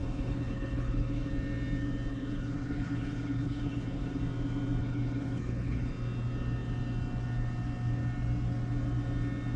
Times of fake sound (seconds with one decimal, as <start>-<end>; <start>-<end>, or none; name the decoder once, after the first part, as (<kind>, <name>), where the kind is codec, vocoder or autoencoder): 0.0-1.3 (codec, HILCodec); 2.1-4.2; 4.8-5.9